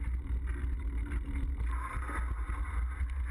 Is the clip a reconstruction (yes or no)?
no